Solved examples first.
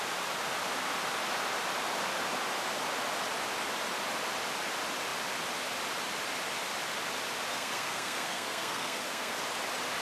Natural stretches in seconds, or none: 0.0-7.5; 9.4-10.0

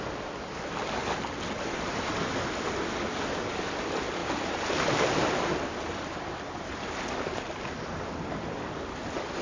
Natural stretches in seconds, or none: 0.0-9.4

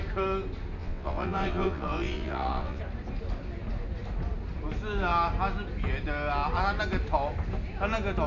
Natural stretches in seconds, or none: 0.0-0.8; 2.8-8.3

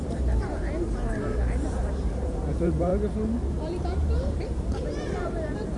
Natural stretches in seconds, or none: 2.9-3.5

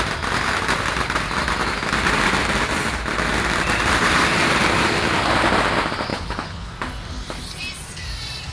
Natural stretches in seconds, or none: 0.0-6.1; 6.7-8.5

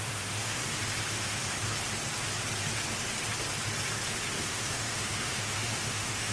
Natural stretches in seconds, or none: 0.6-1.1; 1.5-4.4

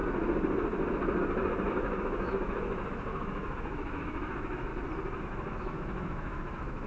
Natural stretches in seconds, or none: 0.0-1.7; 4.7-5.2

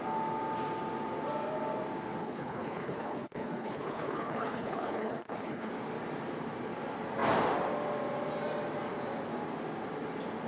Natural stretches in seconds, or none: 0.0-2.2; 5.7-10.5